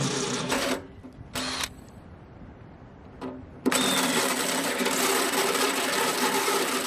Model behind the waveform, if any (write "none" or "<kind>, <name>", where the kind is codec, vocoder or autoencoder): vocoder, BigVGAN v2